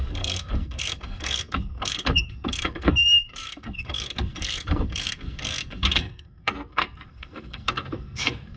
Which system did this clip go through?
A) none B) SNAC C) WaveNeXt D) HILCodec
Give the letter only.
B